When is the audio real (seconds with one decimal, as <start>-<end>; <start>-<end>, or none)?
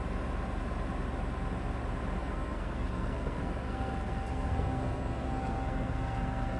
0.0-2.2